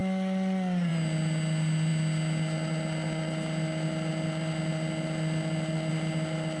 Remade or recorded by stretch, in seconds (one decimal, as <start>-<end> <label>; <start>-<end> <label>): 0.0-0.9 remade; 0.9-6.6 recorded